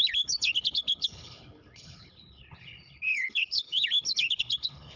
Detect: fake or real fake